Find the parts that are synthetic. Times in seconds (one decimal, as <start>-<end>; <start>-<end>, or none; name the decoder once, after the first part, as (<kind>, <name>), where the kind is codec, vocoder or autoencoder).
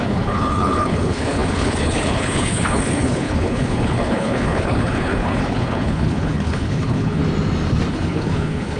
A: 0.0-7.2 (codec, HILCodec); 7.9-8.8